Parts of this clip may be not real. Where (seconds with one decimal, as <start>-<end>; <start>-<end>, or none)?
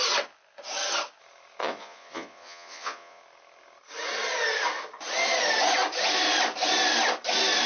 1.6-3.2